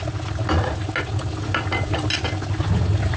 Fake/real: real